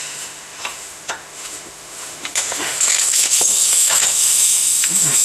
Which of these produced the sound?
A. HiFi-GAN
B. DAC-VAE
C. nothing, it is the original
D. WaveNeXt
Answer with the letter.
B